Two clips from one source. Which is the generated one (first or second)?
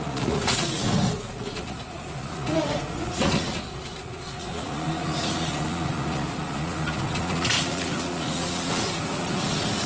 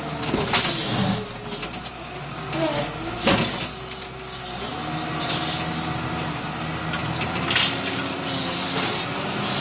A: first